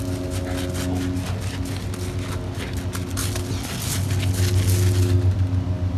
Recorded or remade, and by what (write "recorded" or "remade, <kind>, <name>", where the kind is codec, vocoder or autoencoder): recorded